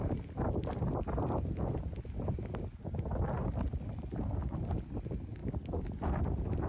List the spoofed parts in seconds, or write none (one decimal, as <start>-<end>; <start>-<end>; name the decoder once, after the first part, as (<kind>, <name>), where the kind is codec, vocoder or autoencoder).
none